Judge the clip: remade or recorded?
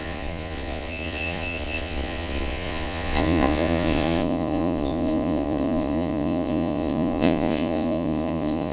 remade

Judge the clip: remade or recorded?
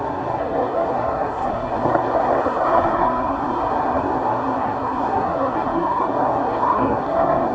remade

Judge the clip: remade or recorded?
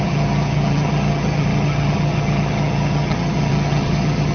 remade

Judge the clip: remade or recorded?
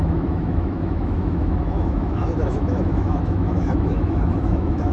remade